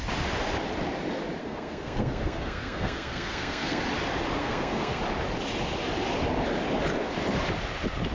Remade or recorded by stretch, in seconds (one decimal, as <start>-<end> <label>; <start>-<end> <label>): 0.0-1.4 recorded; 1.4-3.8 remade; 3.8-4.4 recorded; 4.4-5.0 remade; 5.0-8.1 recorded